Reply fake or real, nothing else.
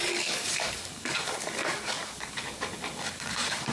fake